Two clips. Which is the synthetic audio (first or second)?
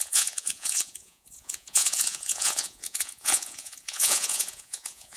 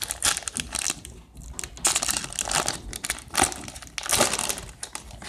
first